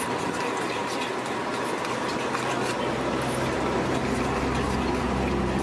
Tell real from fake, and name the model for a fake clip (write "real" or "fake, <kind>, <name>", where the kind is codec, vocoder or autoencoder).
real